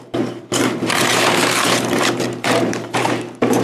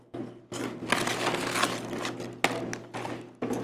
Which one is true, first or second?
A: second